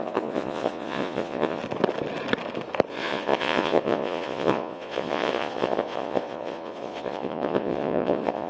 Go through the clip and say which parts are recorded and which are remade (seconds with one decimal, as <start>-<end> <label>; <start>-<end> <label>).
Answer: 0.0-1.6 remade; 1.6-2.9 recorded; 2.9-8.5 remade